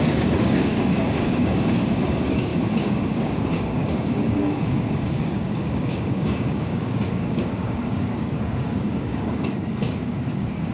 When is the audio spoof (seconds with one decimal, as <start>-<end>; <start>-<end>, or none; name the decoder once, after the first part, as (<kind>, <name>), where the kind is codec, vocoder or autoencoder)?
0.0-10.7 (codec, DAC)